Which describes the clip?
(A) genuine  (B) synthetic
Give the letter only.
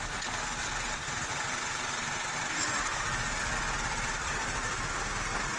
B